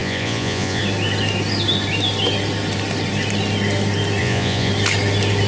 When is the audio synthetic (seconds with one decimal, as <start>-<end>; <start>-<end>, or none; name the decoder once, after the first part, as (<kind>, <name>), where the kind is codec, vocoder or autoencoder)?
0.0-0.8 (vocoder, Vocos); 4.2-4.7